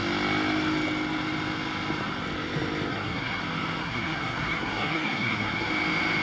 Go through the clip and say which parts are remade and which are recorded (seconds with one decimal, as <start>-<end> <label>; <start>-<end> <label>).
0.0-2.9 recorded; 2.9-3.4 remade; 3.4-3.8 recorded; 3.8-5.7 remade; 5.7-6.2 recorded